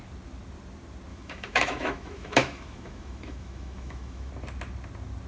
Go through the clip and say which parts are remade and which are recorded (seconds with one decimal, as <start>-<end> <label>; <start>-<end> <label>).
0.0-1.1 recorded; 1.1-4.3 remade; 4.3-5.3 recorded